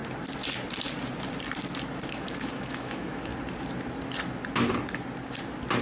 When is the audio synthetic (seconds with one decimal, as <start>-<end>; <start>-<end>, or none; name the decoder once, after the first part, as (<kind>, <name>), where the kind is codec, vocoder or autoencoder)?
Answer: 2.1-3.3 (autoencoder, DAC-VAE)